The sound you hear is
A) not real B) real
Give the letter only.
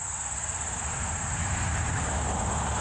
B